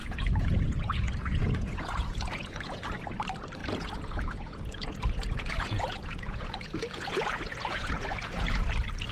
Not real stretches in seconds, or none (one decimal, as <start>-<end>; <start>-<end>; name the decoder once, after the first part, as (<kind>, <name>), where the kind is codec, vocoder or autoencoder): 0.0-2.9 (vocoder, Vocos); 3.6-8.7